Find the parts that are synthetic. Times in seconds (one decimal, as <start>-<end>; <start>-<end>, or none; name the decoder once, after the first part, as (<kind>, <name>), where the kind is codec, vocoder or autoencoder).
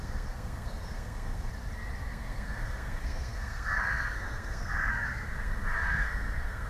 0.0-1.5 (codec, SNAC); 2.1-6.7